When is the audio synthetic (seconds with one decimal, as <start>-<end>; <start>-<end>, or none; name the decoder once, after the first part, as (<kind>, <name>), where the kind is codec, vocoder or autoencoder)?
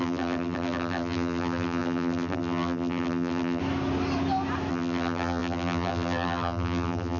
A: 0.0-3.6 (vocoder, BigVGAN v2); 4.7-7.2